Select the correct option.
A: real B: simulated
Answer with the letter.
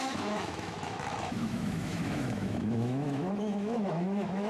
B